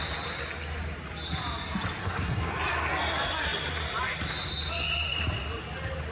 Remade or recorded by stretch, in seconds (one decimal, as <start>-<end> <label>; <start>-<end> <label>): 0.0-2.0 recorded; 2.0-2.5 remade; 2.5-6.1 recorded